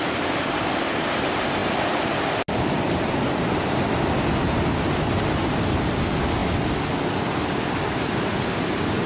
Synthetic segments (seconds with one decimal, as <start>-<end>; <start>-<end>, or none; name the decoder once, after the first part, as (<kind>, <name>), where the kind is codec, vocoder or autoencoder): none